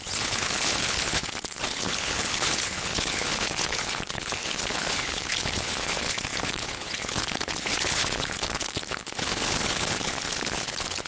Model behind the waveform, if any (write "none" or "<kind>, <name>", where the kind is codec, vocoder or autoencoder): codec, HILCodec